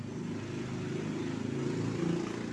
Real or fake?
real